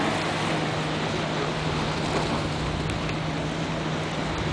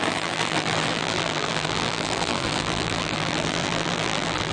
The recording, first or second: first